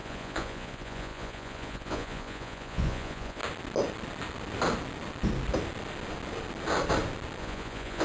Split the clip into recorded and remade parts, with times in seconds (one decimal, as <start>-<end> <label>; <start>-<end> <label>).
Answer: 0.0-3.4 remade; 3.4-7.4 recorded; 7.4-8.0 remade